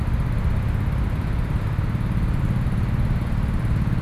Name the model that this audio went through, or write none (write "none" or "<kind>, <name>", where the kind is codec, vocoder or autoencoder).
none